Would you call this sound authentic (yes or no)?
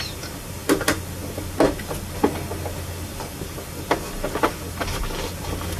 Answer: yes